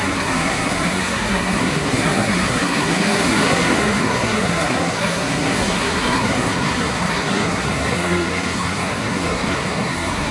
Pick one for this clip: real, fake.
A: fake